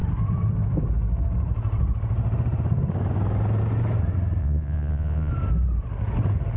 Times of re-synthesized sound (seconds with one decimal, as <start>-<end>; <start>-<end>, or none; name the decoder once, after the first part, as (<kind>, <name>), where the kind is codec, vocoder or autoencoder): 4.4-5.3 (vocoder, Vocos)